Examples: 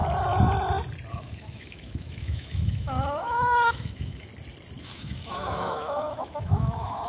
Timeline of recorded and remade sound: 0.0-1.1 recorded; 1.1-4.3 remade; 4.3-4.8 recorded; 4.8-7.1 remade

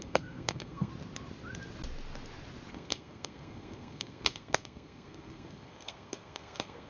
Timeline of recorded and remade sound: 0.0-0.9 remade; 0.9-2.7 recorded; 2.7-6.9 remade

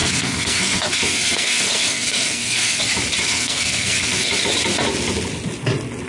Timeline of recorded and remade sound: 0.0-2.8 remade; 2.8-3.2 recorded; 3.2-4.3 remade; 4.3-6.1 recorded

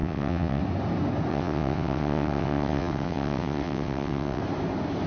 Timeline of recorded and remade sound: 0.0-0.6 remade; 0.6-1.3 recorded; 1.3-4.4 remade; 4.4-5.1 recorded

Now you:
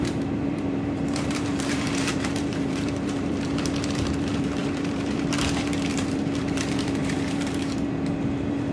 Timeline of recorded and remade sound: 0.0-8.7 remade

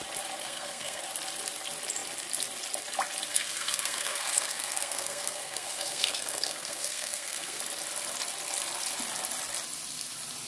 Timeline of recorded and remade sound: 0.0-0.4 recorded; 0.4-1.0 remade; 1.0-3.3 recorded; 3.3-7.6 remade; 7.6-10.5 recorded

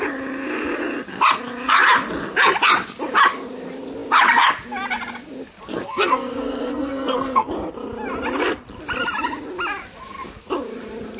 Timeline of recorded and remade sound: 0.0-5.7 recorded; 5.7-7.5 remade; 7.5-11.2 recorded

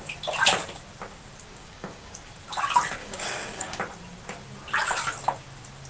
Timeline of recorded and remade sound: 0.0-1.6 recorded; 1.6-2.1 remade; 2.1-3.0 recorded; 3.0-3.8 remade; 3.8-5.9 recorded